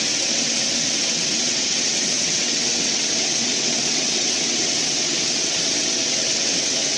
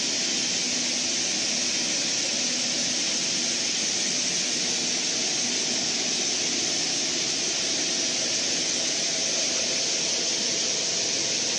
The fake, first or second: first